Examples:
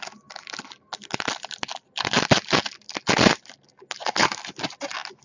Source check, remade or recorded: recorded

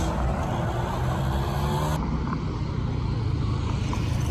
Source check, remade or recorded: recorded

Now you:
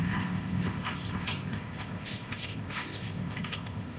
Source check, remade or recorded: remade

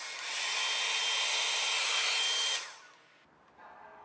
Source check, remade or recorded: recorded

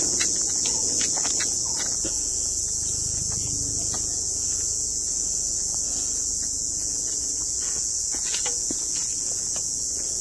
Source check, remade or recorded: remade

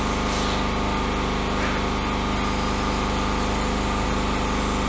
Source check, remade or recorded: recorded